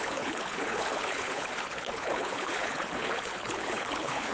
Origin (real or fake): fake